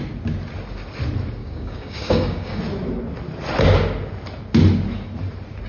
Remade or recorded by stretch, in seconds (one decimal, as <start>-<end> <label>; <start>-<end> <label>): 0.0-1.4 recorded; 1.4-2.6 remade; 2.6-5.7 recorded